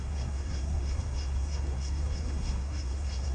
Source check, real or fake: fake